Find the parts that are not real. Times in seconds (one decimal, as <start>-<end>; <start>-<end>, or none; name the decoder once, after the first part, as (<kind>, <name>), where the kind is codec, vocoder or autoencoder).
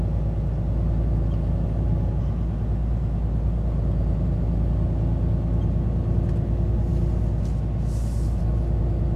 none